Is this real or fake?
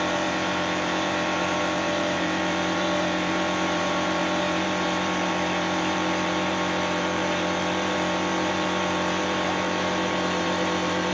fake